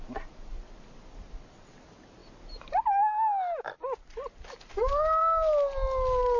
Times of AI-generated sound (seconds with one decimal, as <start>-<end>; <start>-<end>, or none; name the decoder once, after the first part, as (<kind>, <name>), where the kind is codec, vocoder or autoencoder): none

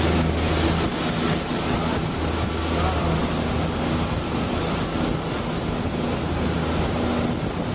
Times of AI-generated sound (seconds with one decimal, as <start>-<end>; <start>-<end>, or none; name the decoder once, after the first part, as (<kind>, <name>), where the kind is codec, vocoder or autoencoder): none

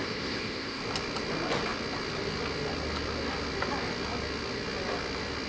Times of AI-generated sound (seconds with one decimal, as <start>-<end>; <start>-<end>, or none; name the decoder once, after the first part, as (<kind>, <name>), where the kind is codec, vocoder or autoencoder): 0.0-0.8 (codec, ZipCodec)